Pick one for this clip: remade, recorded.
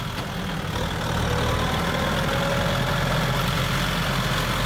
recorded